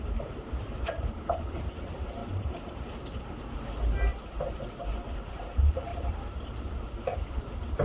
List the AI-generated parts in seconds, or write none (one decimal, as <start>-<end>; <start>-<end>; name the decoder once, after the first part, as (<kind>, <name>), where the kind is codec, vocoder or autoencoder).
0.0-2.2 (vocoder, BigVGAN v2); 2.9-7.8